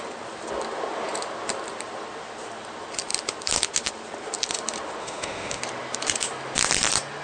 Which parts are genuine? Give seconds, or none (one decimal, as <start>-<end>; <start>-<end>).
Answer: 0.0-5.0; 5.6-7.2